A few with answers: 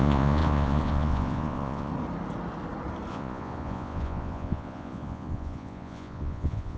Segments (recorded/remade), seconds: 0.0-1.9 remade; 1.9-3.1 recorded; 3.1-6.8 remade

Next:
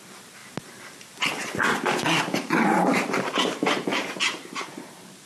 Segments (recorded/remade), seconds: 0.0-0.4 remade; 0.4-2.2 recorded; 2.2-5.3 remade

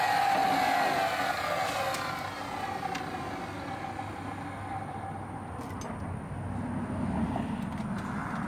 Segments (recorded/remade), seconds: 0.0-8.5 recorded

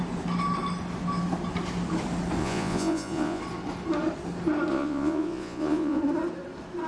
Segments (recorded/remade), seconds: 0.0-2.4 recorded; 2.4-3.4 remade; 3.4-4.7 recorded; 4.7-6.0 remade; 6.0-6.9 recorded

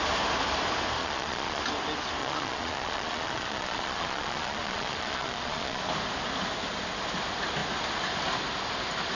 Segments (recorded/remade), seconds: 0.0-1.0 recorded; 1.0-1.6 remade; 1.6-2.2 recorded; 2.2-5.8 remade; 5.8-9.1 recorded